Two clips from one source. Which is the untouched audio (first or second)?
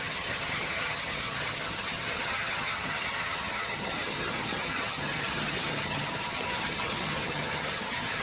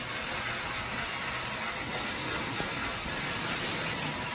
second